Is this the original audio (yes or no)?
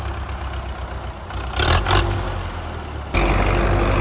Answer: yes